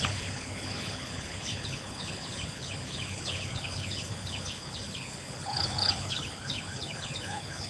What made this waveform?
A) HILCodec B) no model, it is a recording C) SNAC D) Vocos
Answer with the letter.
A